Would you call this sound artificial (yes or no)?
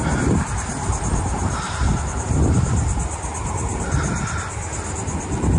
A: no